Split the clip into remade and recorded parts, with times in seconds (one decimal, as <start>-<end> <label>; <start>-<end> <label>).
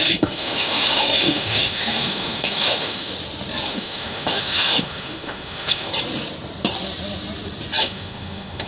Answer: 0.0-3.1 remade; 3.1-3.7 recorded; 3.7-5.9 remade; 5.9-7.8 recorded; 7.8-8.7 remade